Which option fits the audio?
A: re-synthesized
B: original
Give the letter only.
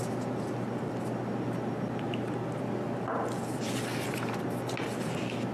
B